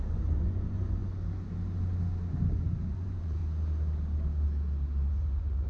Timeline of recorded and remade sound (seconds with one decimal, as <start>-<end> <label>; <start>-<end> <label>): 0.0-1.0 remade; 1.0-2.5 recorded; 2.5-3.4 remade; 3.4-5.1 recorded; 5.1-5.7 remade